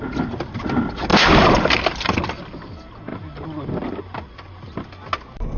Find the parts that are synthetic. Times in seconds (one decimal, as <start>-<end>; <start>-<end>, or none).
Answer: 1.1-2.4; 3.1-4.9